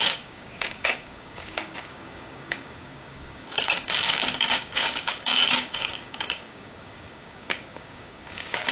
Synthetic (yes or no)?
yes